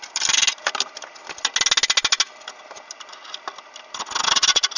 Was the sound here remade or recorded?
recorded